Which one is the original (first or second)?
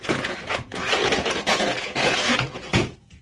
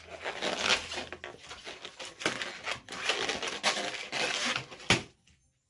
second